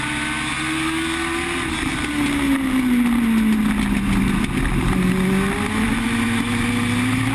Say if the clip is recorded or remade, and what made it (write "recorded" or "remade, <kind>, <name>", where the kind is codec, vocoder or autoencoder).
recorded